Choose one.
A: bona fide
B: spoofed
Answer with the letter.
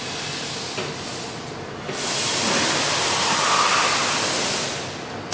A